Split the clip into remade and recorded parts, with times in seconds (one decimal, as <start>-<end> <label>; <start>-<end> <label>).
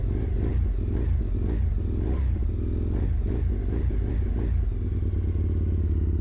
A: 0.0-6.2 recorded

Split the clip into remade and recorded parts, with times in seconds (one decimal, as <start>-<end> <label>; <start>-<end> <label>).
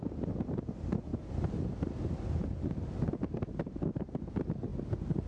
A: 0.0-5.3 recorded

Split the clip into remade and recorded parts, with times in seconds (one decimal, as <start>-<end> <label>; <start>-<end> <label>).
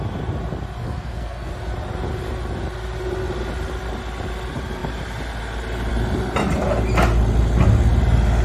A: 0.0-0.8 recorded; 0.8-1.5 remade; 1.5-8.4 recorded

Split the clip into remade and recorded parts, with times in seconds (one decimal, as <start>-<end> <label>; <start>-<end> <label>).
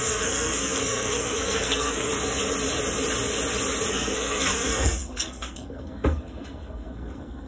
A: 0.0-2.1 remade; 2.1-3.9 recorded; 3.9-7.5 remade